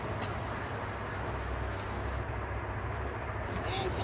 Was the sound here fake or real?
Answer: real